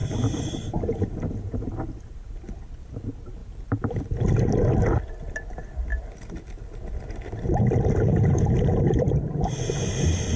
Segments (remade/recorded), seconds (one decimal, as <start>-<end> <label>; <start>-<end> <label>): 0.0-2.3 remade; 2.3-8.1 recorded; 8.1-9.1 remade; 9.1-10.4 recorded